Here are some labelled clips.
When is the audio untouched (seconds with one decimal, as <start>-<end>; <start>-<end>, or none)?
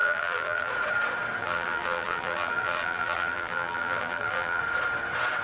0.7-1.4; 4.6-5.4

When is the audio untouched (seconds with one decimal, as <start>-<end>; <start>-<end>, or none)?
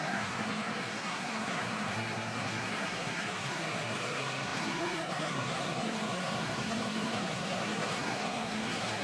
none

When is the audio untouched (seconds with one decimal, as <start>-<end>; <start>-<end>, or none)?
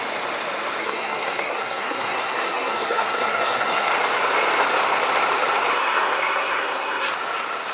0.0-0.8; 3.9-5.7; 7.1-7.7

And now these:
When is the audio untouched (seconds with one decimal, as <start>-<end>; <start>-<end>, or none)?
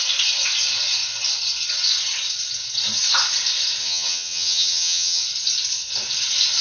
0.0-3.8; 5.2-6.6